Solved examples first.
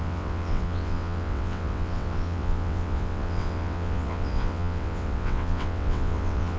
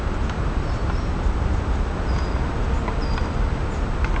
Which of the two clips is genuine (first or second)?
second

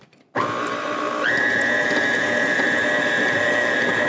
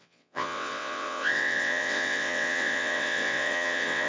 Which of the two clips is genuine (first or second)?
first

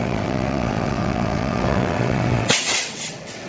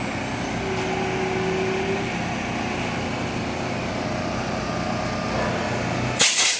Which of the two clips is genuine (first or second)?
second